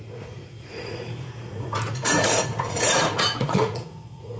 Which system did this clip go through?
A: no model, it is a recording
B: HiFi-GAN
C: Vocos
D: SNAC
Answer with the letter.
C